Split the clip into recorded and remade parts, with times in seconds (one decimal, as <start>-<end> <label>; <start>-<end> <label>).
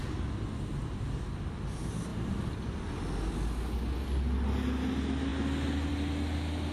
0.0-2.1 recorded; 2.1-3.3 remade; 3.3-6.7 recorded